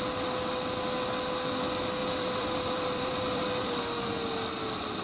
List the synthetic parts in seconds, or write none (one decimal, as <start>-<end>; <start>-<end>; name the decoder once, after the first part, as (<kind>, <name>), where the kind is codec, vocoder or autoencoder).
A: 2.0-3.8 (vocoder, BigVGAN v2)